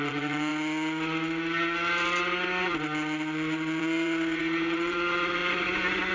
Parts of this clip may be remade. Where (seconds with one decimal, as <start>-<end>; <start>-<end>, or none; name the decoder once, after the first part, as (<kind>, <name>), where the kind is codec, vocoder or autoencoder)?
0.0-0.5 (vocoder, Vocos); 3.8-6.1